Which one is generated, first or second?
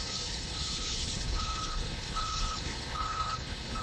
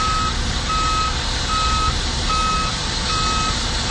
first